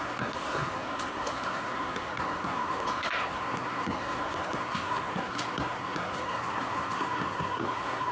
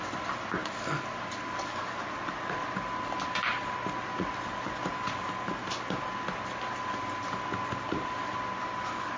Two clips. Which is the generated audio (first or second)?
first